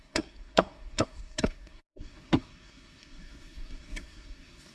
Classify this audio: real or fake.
fake